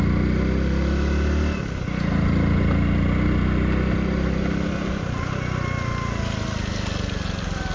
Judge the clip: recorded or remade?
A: recorded